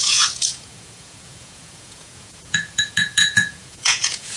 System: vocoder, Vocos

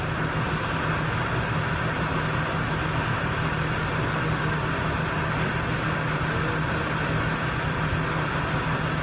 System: none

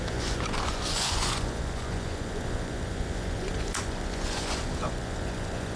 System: vocoder, Vocos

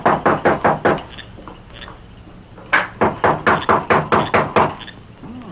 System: none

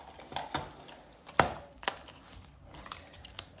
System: none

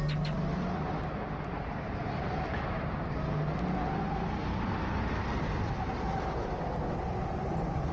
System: none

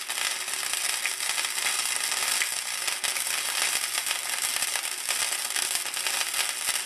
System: none